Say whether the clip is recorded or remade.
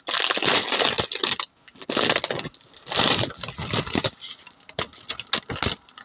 recorded